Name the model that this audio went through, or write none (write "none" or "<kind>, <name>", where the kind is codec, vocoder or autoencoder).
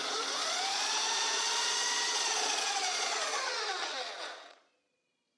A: vocoder, Vocos